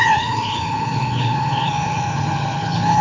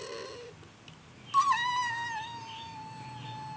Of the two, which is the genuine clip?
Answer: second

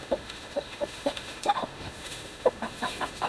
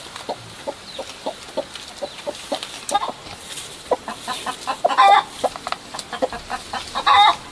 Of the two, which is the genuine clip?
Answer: second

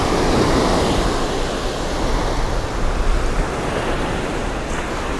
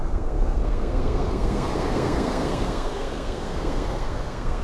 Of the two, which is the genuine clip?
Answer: first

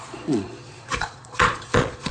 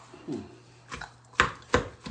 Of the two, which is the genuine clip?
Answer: second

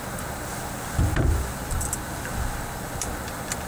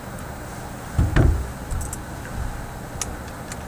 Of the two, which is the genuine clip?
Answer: second